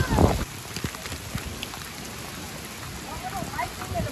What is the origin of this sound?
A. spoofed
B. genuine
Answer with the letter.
B